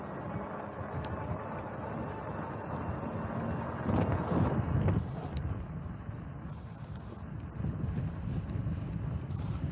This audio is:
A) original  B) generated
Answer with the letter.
A